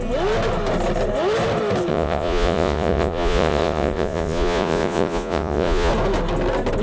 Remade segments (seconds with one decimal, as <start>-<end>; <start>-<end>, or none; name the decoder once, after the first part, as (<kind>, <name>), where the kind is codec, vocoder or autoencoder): 1.9-5.9 (vocoder, Vocos)